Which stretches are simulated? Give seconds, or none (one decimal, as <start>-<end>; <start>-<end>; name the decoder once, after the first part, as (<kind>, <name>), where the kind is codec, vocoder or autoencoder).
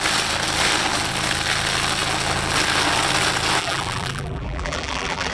3.6-5.3 (vocoder, BigVGAN v2)